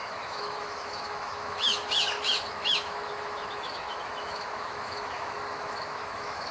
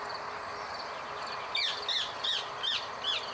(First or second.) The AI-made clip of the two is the first